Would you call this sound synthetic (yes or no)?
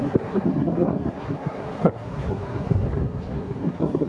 yes